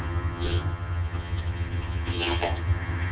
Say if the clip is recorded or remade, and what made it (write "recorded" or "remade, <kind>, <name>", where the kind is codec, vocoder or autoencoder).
remade, vocoder, HiFi-GAN